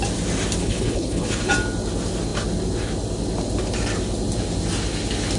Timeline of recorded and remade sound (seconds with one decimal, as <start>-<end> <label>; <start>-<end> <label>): 0.0-0.6 recorded; 0.6-1.5 remade; 1.5-5.4 recorded